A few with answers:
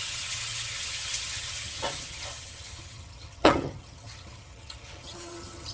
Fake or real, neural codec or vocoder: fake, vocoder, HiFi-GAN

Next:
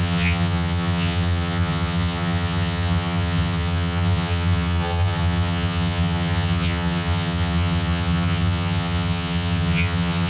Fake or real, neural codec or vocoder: fake, vocoder, HiFi-GAN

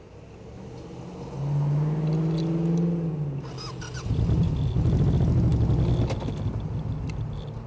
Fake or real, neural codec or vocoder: real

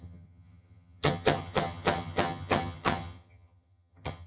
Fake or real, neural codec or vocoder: fake, vocoder, HiFi-GAN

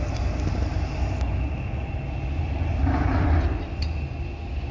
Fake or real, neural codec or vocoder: real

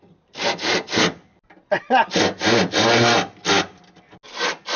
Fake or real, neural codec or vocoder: real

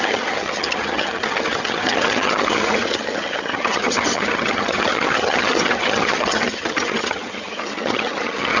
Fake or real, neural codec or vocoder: fake, vocoder, HiFi-GAN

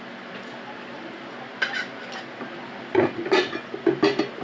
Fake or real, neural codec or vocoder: real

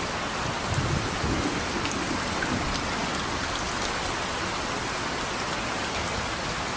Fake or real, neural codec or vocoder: real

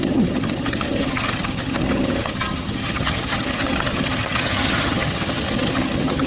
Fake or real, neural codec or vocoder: fake, vocoder, HiFi-GAN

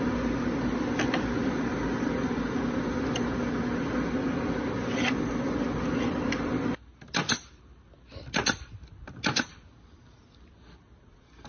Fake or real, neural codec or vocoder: real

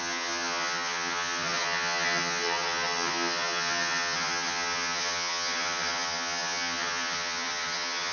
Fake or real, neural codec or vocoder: fake, vocoder, HiFi-GAN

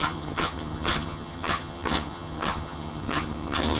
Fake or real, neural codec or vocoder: fake, vocoder, HiFi-GAN